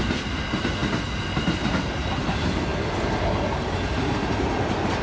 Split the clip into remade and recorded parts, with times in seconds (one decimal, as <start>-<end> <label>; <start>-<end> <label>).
0.0-5.0 recorded